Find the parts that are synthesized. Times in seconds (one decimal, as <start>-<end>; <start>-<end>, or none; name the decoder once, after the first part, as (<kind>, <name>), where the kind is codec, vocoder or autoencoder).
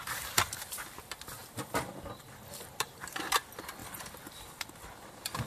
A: none